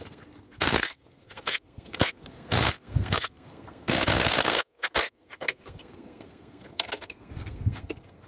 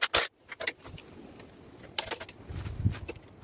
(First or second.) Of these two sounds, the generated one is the first